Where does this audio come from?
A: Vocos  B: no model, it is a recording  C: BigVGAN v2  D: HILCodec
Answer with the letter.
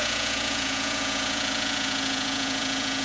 A